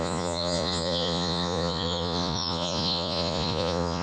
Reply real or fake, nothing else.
fake